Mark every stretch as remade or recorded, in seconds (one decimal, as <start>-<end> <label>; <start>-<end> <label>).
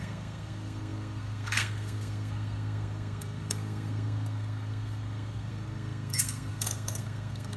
0.0-7.6 remade